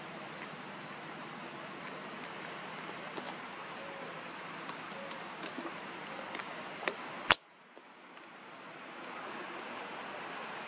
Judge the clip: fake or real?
real